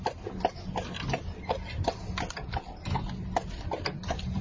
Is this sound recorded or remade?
recorded